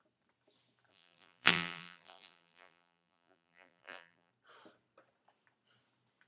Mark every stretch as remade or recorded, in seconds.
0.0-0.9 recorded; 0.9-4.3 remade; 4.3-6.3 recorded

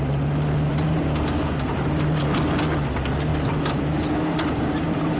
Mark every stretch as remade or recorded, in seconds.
0.0-0.7 recorded; 0.7-2.2 remade; 2.2-3.3 recorded; 3.3-5.2 remade

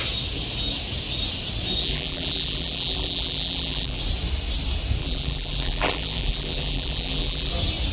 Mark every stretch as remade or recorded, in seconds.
0.0-1.8 recorded; 1.8-4.0 remade; 4.0-5.0 recorded; 5.0-7.5 remade; 7.5-7.9 recorded

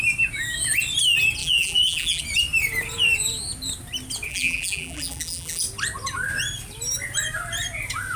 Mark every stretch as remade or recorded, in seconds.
0.0-1.4 recorded; 1.4-2.2 remade; 2.2-4.3 recorded; 4.3-5.6 remade; 5.6-8.2 recorded

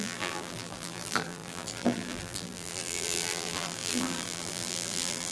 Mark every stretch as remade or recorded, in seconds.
0.0-5.3 remade

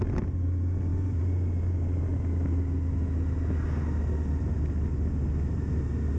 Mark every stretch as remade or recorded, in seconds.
0.0-6.2 recorded

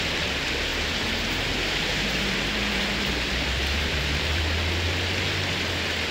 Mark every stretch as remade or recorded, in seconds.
0.0-0.7 recorded; 0.7-4.4 remade; 4.4-6.1 recorded